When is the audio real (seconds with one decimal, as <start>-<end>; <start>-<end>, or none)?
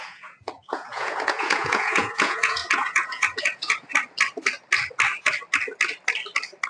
3.9-6.7